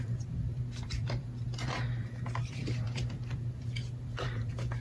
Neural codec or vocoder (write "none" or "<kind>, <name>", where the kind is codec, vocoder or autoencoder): vocoder, BigVGAN v2